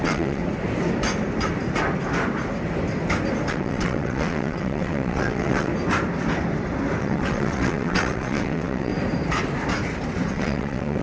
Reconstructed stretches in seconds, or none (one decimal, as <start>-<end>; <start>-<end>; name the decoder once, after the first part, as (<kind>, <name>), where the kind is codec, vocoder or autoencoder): 0.0-0.4 (vocoder, WaveNeXt); 3.5-5.7; 7.0-8.9; 10.3-11.0